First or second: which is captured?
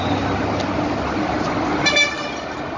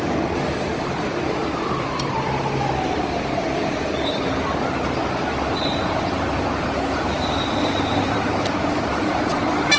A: first